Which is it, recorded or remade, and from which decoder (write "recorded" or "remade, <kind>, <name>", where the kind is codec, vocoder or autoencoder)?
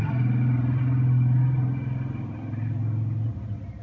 recorded